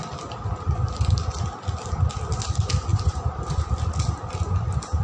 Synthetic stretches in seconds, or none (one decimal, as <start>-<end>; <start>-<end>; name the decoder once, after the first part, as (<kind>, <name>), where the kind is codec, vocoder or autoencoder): 2.9-3.6 (vocoder, BigVGAN v2)